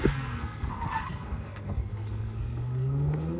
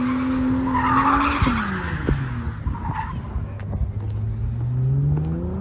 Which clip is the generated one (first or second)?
first